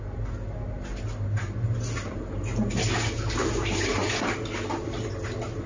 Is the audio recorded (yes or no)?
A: yes